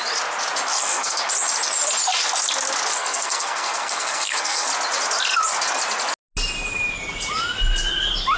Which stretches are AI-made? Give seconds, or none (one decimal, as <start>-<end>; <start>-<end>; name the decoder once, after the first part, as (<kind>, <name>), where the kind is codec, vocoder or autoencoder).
0.7-1.2 (codec, SNAC); 2.9-4.7